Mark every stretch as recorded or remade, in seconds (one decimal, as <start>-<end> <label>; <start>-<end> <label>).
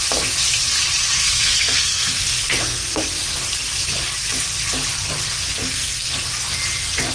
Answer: 0.0-1.2 recorded; 1.2-3.1 remade; 3.1-5.6 recorded; 5.6-6.1 remade; 6.1-7.1 recorded